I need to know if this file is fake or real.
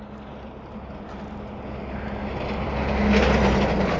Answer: real